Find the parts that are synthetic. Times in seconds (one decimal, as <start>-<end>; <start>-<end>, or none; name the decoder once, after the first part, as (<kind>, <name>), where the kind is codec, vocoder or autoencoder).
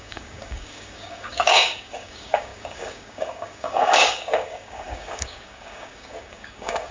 0.0-6.9 (codec, DAC)